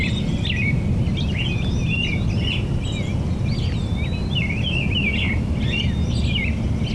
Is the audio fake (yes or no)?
no